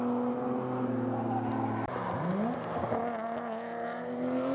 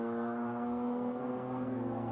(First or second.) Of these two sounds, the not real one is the second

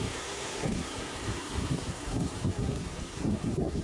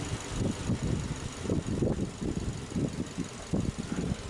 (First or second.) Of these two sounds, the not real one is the first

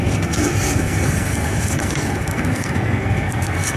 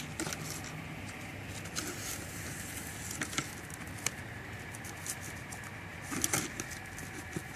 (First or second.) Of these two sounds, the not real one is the first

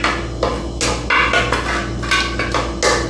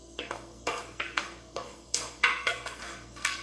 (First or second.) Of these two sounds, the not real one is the second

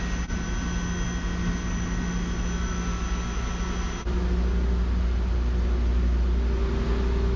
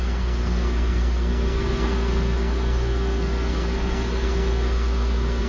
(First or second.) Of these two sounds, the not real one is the second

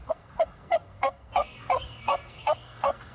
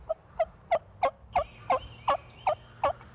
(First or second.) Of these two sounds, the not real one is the first